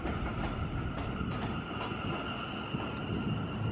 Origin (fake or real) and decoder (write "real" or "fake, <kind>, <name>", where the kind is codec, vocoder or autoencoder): real